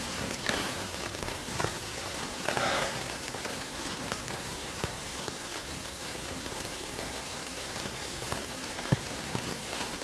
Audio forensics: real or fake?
fake